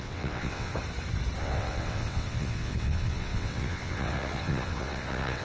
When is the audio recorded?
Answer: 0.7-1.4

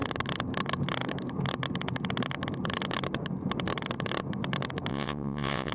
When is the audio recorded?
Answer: 0.0-4.9

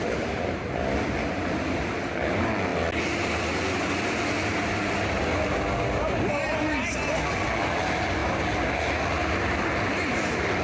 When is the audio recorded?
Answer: 0.0-10.6

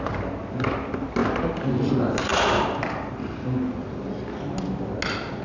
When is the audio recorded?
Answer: 0.0-5.4

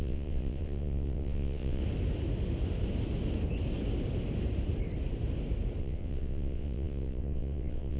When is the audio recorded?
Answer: 1.8-5.8

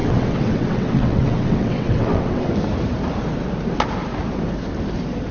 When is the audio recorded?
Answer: 2.5-5.3

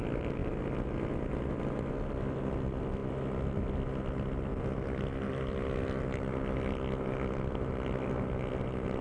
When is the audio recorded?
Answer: 0.0-9.0

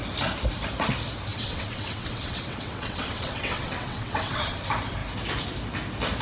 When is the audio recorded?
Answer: 0.0-1.3; 4.6-6.2